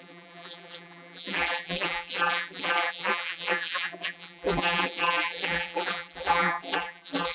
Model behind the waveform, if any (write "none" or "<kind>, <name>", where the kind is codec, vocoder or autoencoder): vocoder, BigVGAN v2